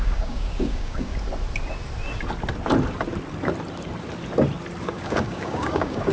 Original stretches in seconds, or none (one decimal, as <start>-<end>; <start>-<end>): 1.1-4.8